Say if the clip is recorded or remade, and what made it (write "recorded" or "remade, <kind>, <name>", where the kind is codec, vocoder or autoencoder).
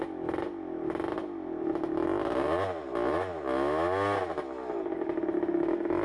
recorded